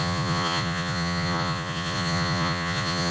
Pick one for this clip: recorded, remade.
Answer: remade